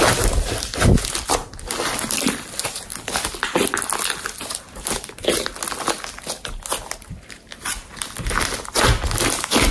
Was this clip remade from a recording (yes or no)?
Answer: no